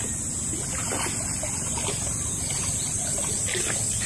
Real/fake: real